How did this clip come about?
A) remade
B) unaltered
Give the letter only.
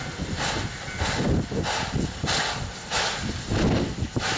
B